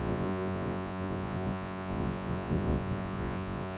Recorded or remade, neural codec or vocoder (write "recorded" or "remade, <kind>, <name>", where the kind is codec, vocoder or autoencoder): remade, vocoder, Vocos